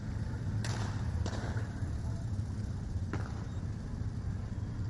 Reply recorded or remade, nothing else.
recorded